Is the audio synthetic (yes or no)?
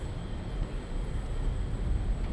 no